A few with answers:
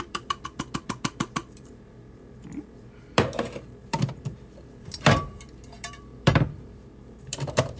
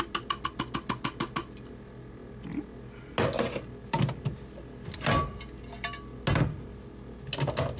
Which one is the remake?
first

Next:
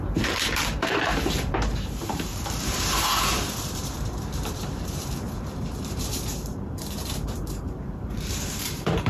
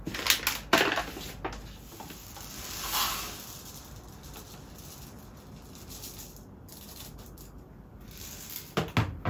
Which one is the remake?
first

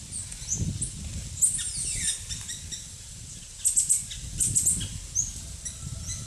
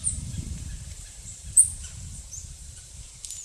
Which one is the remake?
second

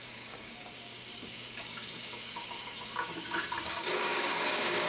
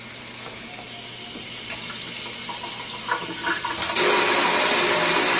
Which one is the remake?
first